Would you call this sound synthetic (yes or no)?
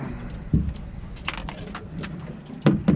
no